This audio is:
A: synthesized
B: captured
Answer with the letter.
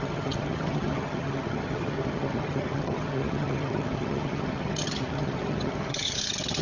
A